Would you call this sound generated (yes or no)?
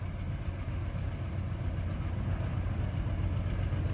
no